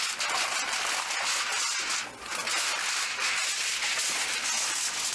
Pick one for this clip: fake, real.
real